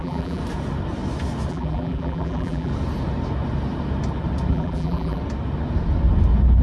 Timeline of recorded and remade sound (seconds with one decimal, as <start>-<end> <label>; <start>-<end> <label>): 0.0-0.4 remade; 0.4-1.5 recorded; 1.5-2.7 remade; 2.7-4.5 recorded; 4.5-5.2 remade; 5.2-6.6 recorded